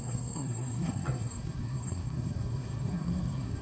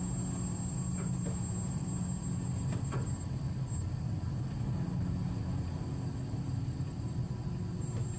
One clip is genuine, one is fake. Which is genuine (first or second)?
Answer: second